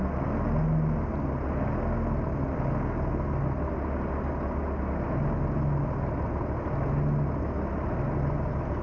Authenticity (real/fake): real